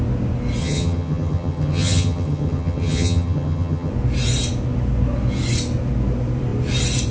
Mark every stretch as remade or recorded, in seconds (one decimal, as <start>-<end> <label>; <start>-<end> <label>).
0.0-0.6 recorded; 0.6-3.9 remade; 3.9-7.1 recorded